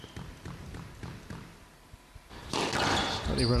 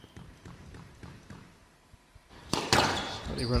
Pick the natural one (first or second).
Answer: first